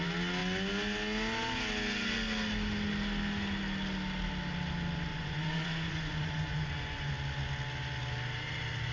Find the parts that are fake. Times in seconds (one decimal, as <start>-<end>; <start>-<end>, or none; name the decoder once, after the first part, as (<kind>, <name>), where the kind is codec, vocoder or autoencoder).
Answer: 5.1-7.1 (vocoder, Vocos)